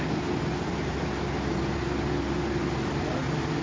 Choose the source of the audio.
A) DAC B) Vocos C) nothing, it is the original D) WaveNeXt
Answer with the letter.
C